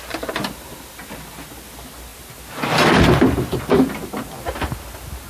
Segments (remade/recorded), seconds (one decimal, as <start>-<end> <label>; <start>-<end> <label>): 0.0-5.3 recorded